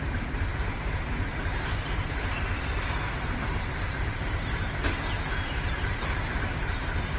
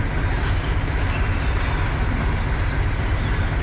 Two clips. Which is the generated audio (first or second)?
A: first